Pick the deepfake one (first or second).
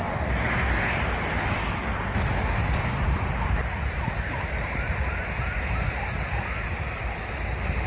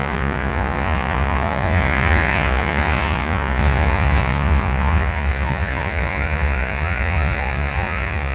second